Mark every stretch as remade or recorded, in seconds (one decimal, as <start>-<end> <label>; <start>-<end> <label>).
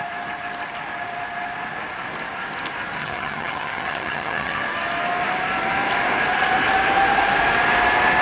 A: 0.0-3.0 recorded; 3.0-4.6 remade; 4.6-8.2 recorded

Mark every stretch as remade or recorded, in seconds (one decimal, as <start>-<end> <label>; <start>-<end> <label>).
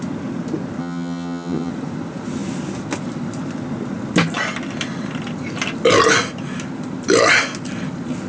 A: 0.0-0.8 recorded; 0.8-1.7 remade; 1.7-8.3 recorded